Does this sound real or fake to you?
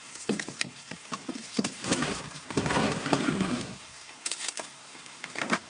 fake